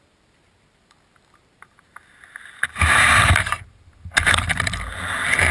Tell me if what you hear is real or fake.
real